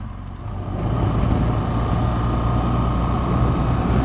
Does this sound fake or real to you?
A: real